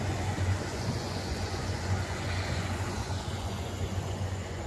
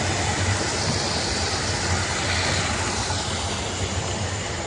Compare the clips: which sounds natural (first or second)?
second